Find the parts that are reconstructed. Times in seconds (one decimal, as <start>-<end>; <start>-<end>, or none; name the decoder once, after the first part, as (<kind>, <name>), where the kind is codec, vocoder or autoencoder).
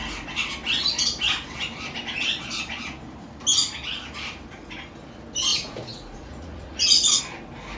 5.5-7.2 (vocoder, Vocos)